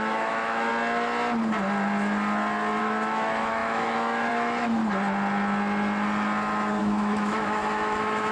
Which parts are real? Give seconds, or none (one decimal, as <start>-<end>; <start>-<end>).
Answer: 0.7-2.8; 4.8-6.8